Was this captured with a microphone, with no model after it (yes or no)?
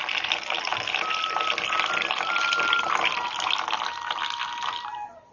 yes